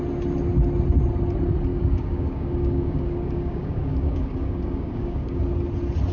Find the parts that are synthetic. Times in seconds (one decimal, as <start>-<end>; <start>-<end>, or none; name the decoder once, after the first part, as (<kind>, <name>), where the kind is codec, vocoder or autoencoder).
1.7-5.4 (codec, DAC)